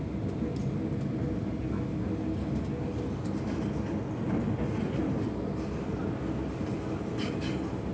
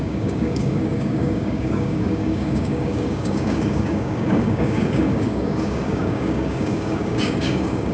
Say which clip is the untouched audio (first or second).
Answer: first